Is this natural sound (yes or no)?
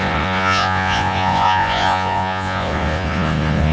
no